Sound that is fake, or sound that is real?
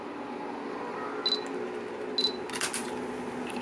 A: real